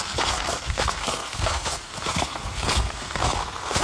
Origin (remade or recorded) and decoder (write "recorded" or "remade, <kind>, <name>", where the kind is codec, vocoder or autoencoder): remade, codec, SNAC